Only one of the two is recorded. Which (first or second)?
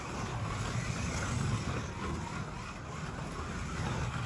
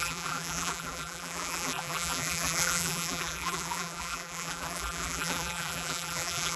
first